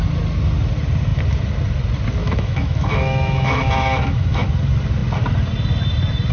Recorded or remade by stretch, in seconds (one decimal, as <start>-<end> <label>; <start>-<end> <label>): 0.0-2.2 recorded; 2.2-4.5 remade; 4.5-6.3 recorded